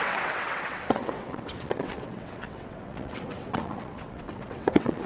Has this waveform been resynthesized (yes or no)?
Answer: yes